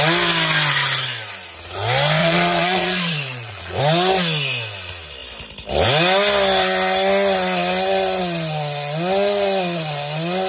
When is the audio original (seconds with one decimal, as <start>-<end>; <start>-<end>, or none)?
0.0-2.2; 3.8-10.5